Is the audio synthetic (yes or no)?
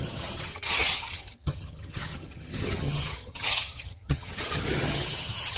yes